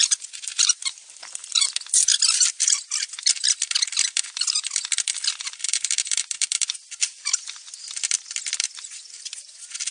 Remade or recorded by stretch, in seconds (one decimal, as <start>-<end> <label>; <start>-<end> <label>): 0.0-7.0 remade; 7.0-8.1 recorded; 8.1-9.9 remade